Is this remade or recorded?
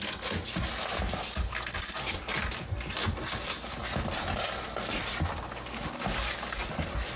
recorded